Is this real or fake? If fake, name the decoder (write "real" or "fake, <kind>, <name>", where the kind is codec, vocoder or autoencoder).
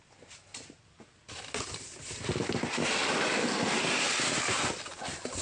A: real